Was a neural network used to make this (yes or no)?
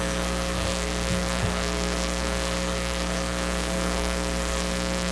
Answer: yes